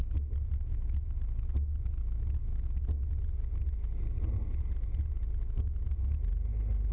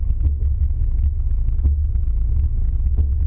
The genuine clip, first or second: first